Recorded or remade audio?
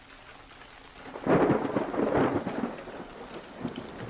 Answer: recorded